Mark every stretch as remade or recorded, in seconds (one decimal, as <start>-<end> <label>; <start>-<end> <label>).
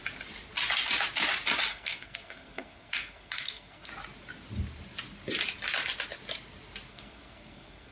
0.0-1.7 recorded; 1.7-3.9 remade; 3.9-6.9 recorded; 6.9-7.9 remade